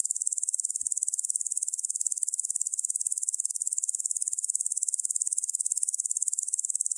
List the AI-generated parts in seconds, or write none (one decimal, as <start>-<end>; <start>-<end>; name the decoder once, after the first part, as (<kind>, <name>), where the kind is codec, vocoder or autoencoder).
none